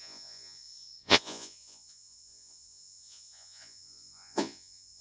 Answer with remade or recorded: remade